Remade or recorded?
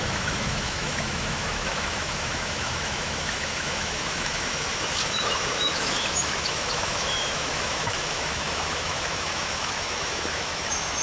remade